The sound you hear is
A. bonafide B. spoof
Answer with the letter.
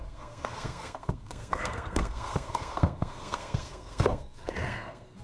B